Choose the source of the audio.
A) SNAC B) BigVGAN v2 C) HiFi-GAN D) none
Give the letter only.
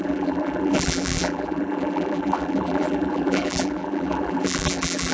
B